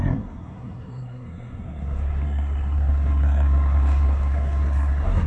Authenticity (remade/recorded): remade